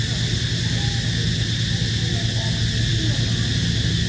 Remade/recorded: recorded